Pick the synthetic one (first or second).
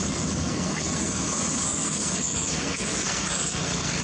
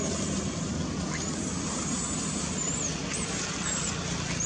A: first